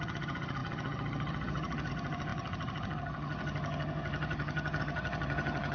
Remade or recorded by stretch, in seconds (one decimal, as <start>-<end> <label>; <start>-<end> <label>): 0.0-5.7 remade